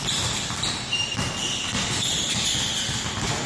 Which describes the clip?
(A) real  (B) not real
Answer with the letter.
A